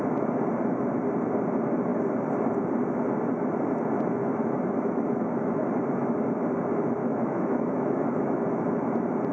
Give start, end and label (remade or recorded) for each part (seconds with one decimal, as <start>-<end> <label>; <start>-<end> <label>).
0.0-4.2 recorded; 4.2-5.7 remade; 5.7-7.0 recorded; 7.0-8.4 remade; 8.4-9.3 recorded